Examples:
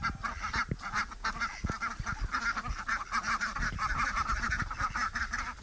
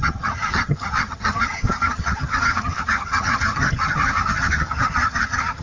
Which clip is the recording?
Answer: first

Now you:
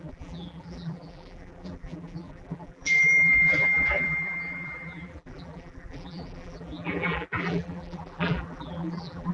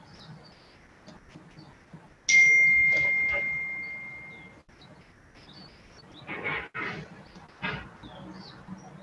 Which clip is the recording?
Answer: second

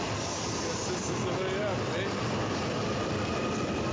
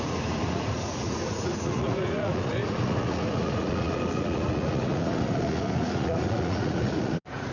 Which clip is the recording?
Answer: first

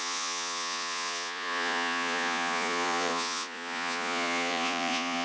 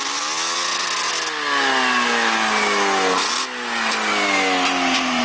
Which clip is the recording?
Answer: second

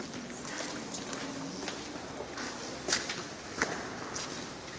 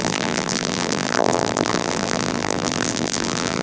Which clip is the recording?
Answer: first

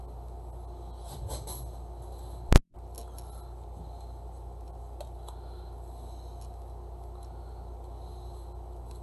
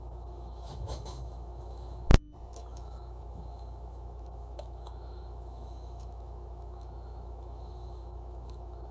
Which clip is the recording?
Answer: first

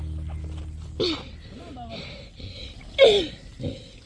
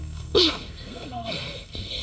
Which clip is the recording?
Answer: first